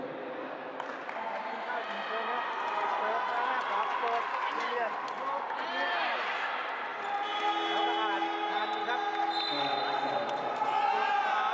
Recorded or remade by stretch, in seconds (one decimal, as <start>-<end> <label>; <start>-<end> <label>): 0.0-4.3 recorded; 4.3-4.9 remade; 4.9-11.5 recorded